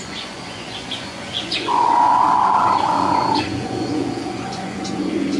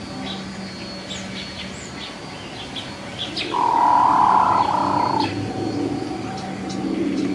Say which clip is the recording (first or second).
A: second